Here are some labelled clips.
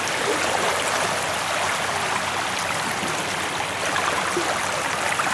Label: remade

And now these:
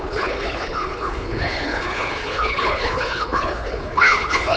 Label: remade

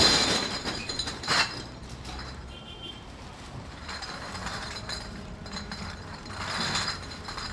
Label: remade